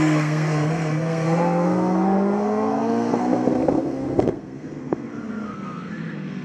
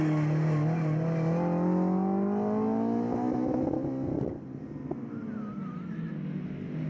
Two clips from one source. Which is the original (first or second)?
second